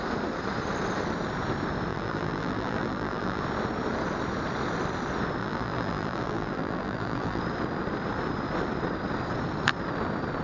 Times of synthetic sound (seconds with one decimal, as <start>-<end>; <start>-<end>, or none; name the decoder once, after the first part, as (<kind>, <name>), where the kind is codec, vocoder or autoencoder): 1.9-3.4 (vocoder, BigVGAN v2); 5.4-7.4